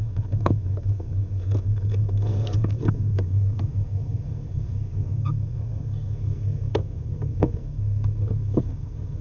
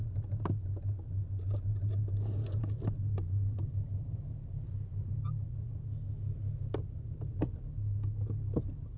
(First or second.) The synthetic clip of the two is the first